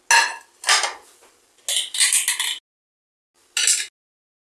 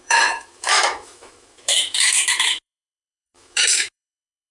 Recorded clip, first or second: first